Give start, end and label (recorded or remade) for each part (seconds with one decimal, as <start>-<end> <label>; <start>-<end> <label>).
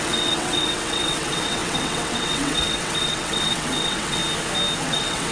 0.0-4.2 remade; 4.2-4.8 recorded; 4.8-5.3 remade